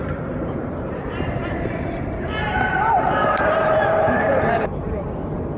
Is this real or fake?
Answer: fake